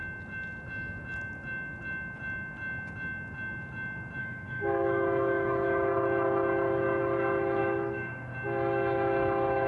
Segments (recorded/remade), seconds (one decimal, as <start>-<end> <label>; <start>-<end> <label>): 0.0-4.2 recorded; 4.2-5.9 remade; 5.9-7.6 recorded; 7.6-8.3 remade; 8.3-9.7 recorded